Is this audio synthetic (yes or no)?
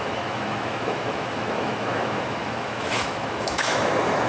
yes